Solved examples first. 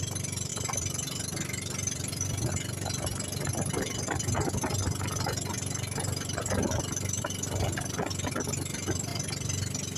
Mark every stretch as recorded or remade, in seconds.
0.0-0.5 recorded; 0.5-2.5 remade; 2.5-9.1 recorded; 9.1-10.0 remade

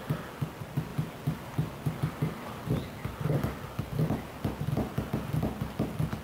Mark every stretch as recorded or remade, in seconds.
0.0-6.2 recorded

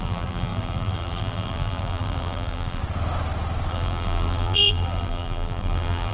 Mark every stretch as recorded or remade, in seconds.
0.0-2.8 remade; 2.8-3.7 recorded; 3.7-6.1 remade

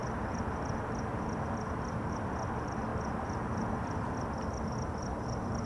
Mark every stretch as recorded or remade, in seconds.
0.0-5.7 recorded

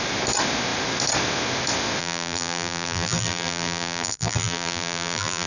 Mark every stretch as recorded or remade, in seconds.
0.0-2.0 recorded; 2.0-5.5 remade

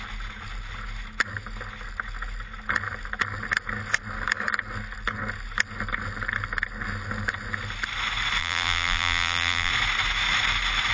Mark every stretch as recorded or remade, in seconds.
0.0-8.4 recorded; 8.4-9.7 remade; 9.7-10.9 recorded